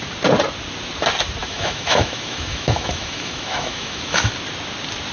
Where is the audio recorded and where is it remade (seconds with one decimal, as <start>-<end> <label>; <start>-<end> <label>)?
0.0-1.4 recorded; 1.4-4.3 remade; 4.3-5.1 recorded